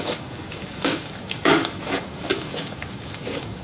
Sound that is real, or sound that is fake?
fake